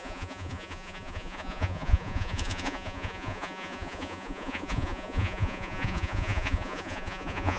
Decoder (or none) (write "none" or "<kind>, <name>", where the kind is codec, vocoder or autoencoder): vocoder, Vocos